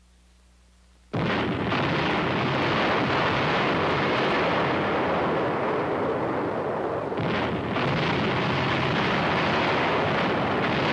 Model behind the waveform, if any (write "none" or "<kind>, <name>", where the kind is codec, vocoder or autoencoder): none